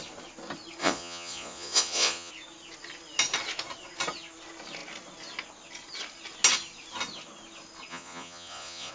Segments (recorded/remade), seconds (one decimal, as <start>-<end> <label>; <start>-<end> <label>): 0.0-0.8 recorded; 0.8-2.3 remade; 2.3-7.9 recorded; 7.9-8.9 remade

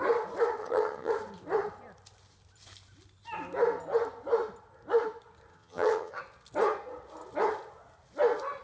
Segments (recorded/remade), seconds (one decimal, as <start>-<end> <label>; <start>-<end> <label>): 0.0-0.6 recorded; 0.6-1.1 remade; 1.1-5.5 recorded; 5.5-6.2 remade; 6.2-8.6 recorded

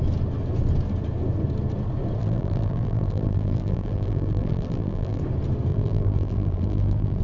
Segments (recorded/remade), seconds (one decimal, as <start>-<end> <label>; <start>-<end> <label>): 0.0-2.2 recorded; 2.2-5.2 remade; 5.2-5.7 recorded; 5.7-7.2 remade

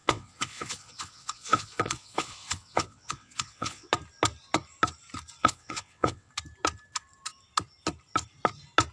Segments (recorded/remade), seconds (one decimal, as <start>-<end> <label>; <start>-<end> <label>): 0.0-3.9 remade; 3.9-5.4 recorded; 5.4-6.3 remade; 6.3-8.9 recorded